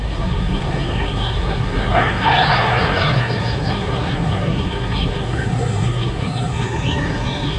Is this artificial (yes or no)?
yes